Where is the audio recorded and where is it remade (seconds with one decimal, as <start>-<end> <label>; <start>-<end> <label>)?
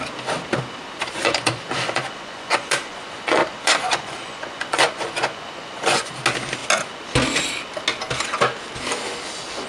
0.0-1.2 recorded; 1.2-6.1 remade; 6.1-9.7 recorded